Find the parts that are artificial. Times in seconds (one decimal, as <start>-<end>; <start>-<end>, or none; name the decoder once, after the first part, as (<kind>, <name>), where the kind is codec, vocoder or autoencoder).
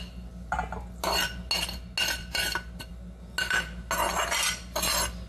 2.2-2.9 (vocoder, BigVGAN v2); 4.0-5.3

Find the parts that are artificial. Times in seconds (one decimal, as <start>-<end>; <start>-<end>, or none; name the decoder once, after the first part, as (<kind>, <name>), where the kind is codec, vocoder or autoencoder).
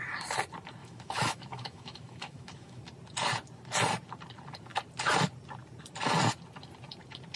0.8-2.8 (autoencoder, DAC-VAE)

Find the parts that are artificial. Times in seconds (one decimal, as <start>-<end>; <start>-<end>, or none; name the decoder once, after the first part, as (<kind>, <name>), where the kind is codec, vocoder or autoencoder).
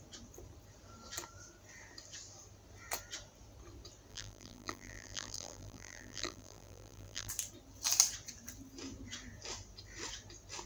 4.1-7.3 (vocoder, BigVGAN v2)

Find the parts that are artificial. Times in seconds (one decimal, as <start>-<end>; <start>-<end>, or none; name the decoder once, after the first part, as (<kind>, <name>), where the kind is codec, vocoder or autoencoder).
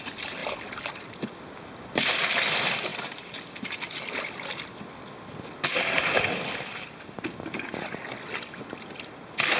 none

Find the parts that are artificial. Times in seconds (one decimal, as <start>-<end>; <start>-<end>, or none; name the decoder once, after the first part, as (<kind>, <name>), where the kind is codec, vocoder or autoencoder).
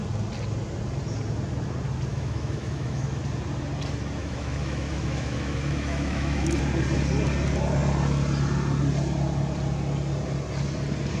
2.1-3.2 (autoencoder, DAC-VAE); 4.2-6.6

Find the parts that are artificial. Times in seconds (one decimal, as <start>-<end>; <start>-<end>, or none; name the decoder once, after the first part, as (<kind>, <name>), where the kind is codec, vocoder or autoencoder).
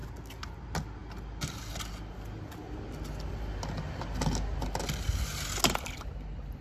none